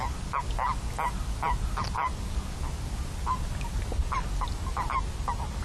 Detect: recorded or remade recorded